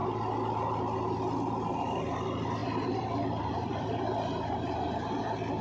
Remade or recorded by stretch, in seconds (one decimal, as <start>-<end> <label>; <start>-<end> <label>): 0.0-2.6 recorded; 2.6-4.0 remade; 4.0-5.6 recorded